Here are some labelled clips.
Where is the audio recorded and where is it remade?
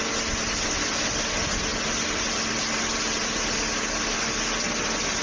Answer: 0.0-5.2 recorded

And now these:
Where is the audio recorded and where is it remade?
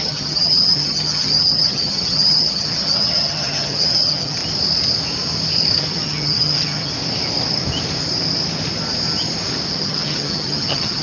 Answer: 0.0-4.4 remade; 4.4-5.8 recorded; 5.8-6.9 remade; 6.9-9.7 recorded; 9.7-11.0 remade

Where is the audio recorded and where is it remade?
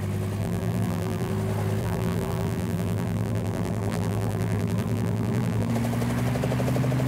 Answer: 0.0-0.4 recorded; 0.4-1.3 remade; 1.3-1.8 recorded; 1.8-5.7 remade; 5.7-7.1 recorded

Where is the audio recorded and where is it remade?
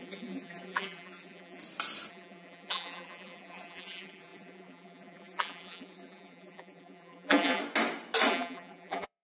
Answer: 0.0-1.6 remade; 1.6-2.1 recorded; 2.1-7.6 remade; 7.6-8.3 recorded; 8.3-9.2 remade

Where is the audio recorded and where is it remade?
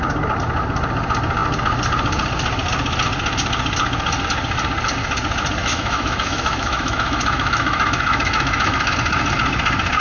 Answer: 0.0-5.6 recorded; 5.6-8.9 remade; 8.9-10.0 recorded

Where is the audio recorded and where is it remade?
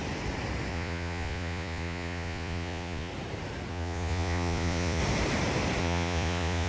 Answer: 0.0-0.7 recorded; 0.7-3.1 remade; 3.1-3.7 recorded; 3.7-5.0 remade; 5.0-5.8 recorded; 5.8-6.7 remade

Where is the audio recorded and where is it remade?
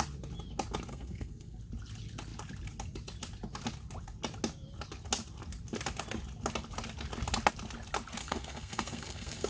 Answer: 0.0-0.9 recorded; 0.9-1.6 remade; 1.6-8.2 recorded; 8.2-9.5 remade